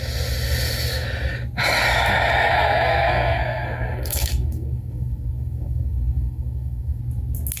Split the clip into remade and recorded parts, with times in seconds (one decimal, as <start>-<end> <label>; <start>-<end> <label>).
0.0-2.5 recorded; 2.5-7.0 remade; 7.0-7.6 recorded